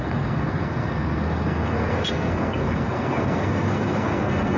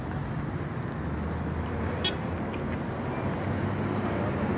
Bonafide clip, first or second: second